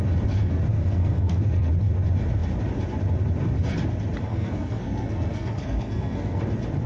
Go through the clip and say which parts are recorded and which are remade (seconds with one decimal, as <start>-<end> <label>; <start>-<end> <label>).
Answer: 0.0-0.7 recorded; 0.7-1.7 remade; 1.7-4.3 recorded; 4.3-6.4 remade; 6.4-6.9 recorded